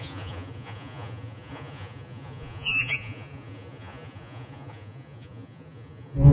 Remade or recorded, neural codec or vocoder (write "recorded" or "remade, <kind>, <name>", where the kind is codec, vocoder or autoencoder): remade, vocoder, Vocos